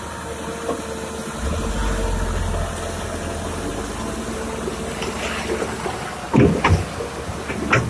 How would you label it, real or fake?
real